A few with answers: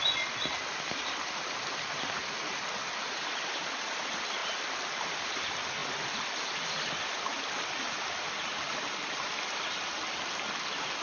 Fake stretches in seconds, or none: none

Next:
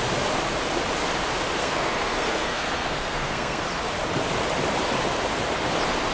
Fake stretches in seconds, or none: 1.6-3.6 (codec, SNAC)

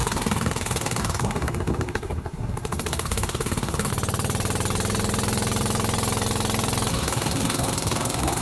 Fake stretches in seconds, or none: 0.0-3.9 (codec, SNAC); 6.9-8.4

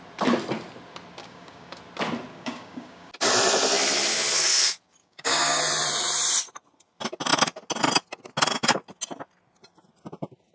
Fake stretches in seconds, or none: 1.2-1.8 (codec, DAC); 2.3-3.1; 5.0-5.6

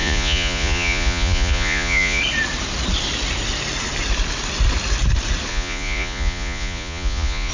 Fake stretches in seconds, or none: 0.0-2.2 (vocoder, Vocos); 5.5-7.5